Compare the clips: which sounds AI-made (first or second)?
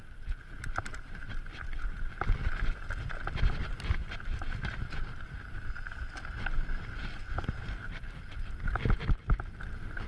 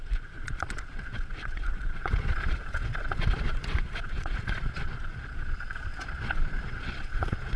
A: second